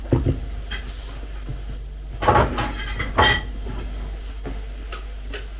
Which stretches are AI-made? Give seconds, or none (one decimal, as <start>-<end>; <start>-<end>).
none